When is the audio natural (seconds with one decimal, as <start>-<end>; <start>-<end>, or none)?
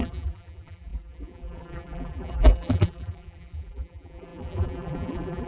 none